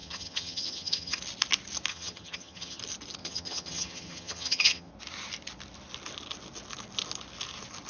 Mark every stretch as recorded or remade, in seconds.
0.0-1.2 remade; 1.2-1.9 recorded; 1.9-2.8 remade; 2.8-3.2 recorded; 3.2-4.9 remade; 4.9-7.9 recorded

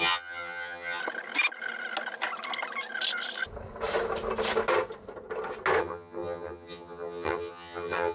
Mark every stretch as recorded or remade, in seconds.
0.0-1.0 remade; 1.0-5.8 recorded; 5.8-8.1 remade

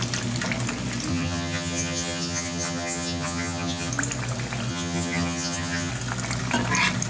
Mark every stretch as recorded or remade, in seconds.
0.0-1.1 recorded; 1.1-3.9 remade; 3.9-4.7 recorded; 4.7-5.9 remade; 5.9-7.1 recorded

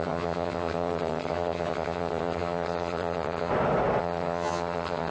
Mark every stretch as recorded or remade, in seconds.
0.0-3.5 remade; 3.5-4.0 recorded; 4.0-5.1 remade

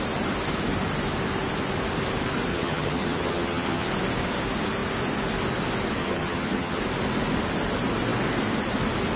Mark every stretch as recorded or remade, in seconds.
0.0-2.5 recorded; 2.5-3.9 remade; 3.9-6.0 recorded; 6.0-6.8 remade; 6.8-9.2 recorded

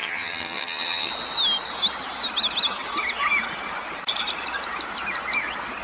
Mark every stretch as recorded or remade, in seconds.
0.0-1.1 remade; 1.1-5.8 recorded

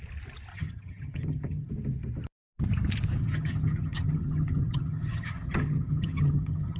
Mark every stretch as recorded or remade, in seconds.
0.0-0.5 recorded; 0.5-1.7 remade; 1.7-3.2 recorded; 3.2-6.8 remade

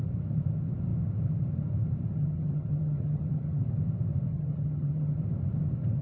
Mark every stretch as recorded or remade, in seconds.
0.0-2.1 recorded; 2.1-3.6 remade; 3.6-4.3 recorded; 4.3-5.2 remade; 5.2-6.0 recorded